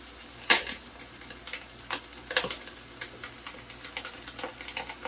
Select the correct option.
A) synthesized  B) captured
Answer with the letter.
B